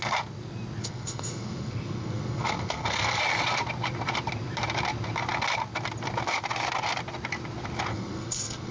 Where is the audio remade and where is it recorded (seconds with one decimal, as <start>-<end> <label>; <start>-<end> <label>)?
0.0-0.8 recorded; 0.8-3.2 remade; 3.2-7.9 recorded; 7.9-8.7 remade